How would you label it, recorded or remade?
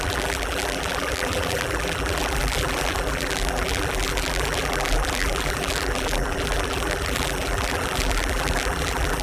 remade